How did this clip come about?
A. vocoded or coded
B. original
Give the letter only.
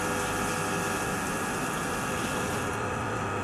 B